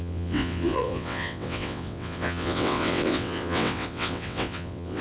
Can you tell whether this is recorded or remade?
remade